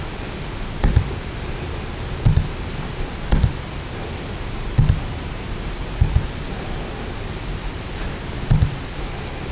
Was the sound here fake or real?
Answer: real